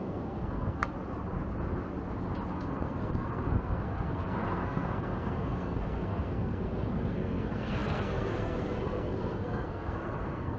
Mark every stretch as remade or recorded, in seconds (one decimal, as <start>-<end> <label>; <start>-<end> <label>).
0.0-0.9 remade; 0.9-2.5 recorded; 2.5-10.6 remade